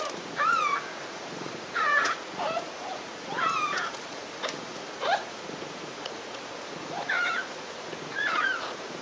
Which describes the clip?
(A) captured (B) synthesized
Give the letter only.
B